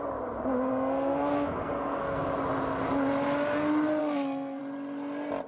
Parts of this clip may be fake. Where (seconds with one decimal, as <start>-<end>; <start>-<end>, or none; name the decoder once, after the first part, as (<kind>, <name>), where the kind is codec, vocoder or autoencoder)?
0.7-2.2 (codec, SNAC); 4.0-4.6